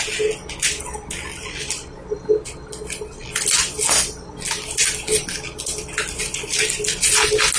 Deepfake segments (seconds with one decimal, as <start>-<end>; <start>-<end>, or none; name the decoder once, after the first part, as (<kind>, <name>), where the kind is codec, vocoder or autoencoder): none